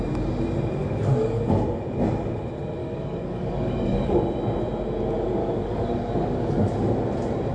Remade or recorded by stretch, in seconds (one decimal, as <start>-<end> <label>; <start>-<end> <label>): 0.0-0.8 recorded; 0.8-1.4 remade; 1.4-2.8 recorded; 2.8-4.2 remade; 4.2-5.4 recorded; 5.4-6.7 remade; 6.7-7.5 recorded